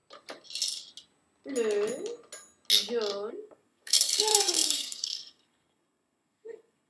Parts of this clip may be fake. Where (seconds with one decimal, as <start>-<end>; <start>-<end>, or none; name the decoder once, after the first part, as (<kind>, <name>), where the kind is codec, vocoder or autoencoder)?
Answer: 3.3-6.9 (codec, SNAC)